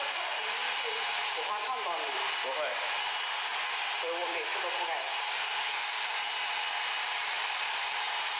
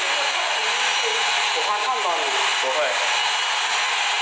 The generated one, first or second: first